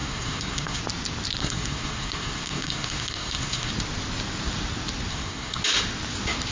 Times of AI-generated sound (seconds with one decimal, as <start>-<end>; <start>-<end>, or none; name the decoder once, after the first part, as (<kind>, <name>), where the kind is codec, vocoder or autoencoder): 0.0-0.8 (codec, SNAC); 1.4-3.7; 5.1-5.6